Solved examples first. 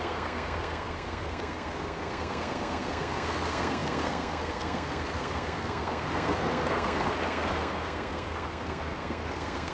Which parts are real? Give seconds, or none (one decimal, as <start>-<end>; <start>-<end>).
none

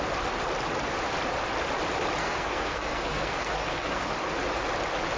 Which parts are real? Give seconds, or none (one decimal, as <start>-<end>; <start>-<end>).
0.0-2.2; 4.1-5.2

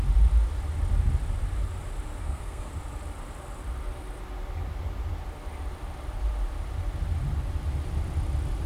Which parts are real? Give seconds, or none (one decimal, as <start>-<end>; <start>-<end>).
0.0-2.2; 2.7-8.7

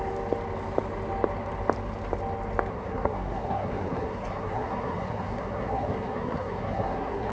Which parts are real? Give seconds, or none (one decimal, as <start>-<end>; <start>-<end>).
0.0-2.7